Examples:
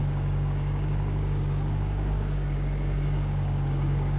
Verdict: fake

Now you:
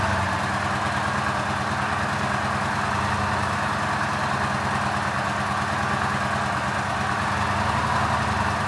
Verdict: real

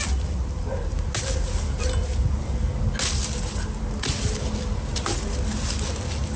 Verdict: real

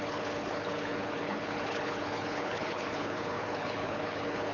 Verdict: fake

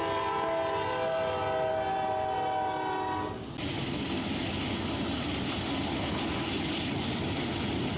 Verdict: real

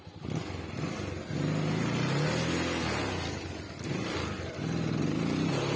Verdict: real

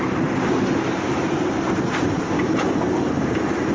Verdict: real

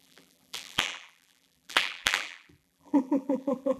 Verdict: fake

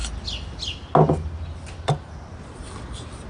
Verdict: real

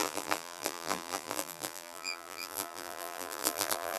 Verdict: fake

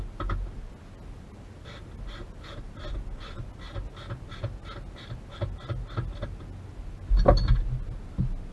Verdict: real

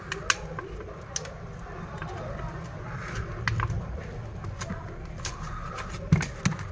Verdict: real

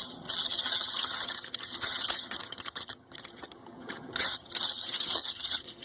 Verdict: fake